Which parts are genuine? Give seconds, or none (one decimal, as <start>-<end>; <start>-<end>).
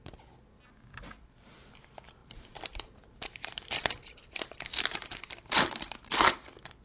0.0-2.2; 6.3-6.8